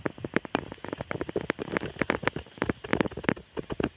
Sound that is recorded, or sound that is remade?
recorded